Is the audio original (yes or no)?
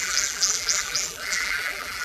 no